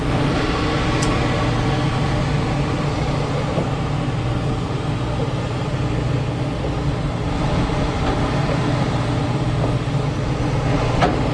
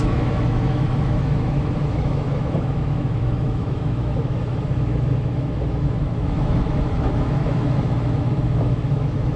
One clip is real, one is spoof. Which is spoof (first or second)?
second